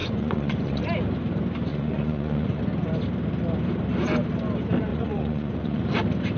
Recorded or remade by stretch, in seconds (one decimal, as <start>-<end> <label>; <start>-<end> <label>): 0.0-0.8 remade; 0.8-1.7 recorded; 1.7-2.6 remade; 2.6-4.9 recorded; 4.9-5.9 remade; 5.9-6.4 recorded